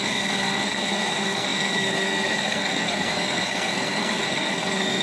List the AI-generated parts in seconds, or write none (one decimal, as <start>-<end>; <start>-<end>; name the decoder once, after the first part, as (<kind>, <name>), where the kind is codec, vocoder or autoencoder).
0.0-5.0 (codec, SNAC)